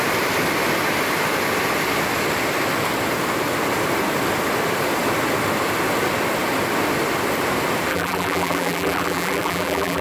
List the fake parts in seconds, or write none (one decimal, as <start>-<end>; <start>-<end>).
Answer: 7.9-10.0